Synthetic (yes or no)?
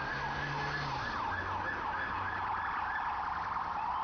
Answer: no